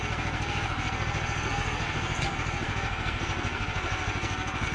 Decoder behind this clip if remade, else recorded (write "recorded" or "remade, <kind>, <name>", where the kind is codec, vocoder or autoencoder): remade, codec, SNAC